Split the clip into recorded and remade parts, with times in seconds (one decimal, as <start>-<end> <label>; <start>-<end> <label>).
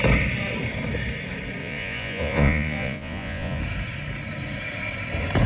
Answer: 0.0-1.6 recorded; 1.6-3.6 remade; 3.6-5.5 recorded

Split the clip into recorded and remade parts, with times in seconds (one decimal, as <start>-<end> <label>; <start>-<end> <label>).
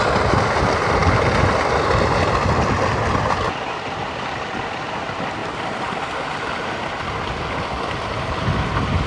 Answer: 0.0-9.1 recorded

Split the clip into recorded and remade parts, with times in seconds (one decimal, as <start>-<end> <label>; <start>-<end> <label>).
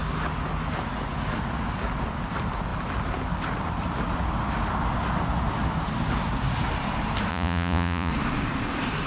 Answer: 0.0-7.3 recorded; 7.3-8.1 remade; 8.1-9.1 recorded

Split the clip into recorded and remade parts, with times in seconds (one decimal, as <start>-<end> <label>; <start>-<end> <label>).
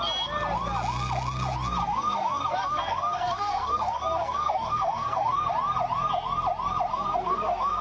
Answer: 0.0-1.8 recorded; 1.8-5.5 remade; 5.5-6.9 recorded; 6.9-7.8 remade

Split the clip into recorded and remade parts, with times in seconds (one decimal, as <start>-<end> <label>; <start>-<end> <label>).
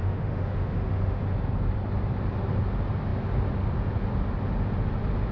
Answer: 0.0-1.2 remade; 1.2-5.3 recorded